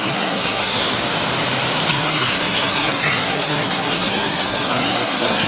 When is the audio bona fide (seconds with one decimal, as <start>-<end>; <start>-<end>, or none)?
0.8-1.9